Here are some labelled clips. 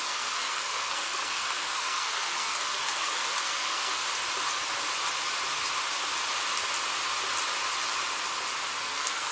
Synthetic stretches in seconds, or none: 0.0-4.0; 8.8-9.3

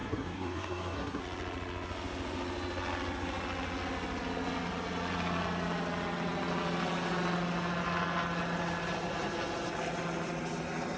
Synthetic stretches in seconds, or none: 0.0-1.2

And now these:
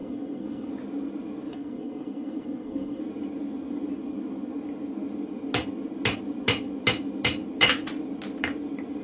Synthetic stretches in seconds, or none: 0.0-0.7; 1.5-3.0

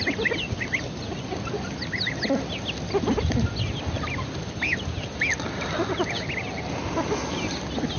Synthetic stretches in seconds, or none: none

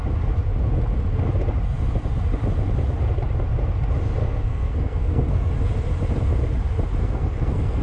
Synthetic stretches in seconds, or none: 4.2-5.5; 7.0-7.8